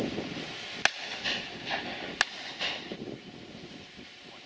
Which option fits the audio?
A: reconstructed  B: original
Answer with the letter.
B